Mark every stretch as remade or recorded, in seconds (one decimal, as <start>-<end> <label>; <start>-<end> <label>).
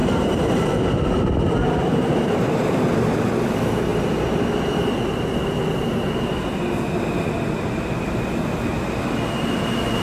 0.0-0.9 remade; 0.9-10.0 recorded